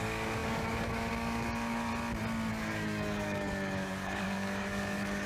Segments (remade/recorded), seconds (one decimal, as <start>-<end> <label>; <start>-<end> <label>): 0.0-1.9 remade; 1.9-2.5 recorded; 2.5-5.3 remade